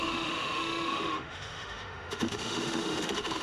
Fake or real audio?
fake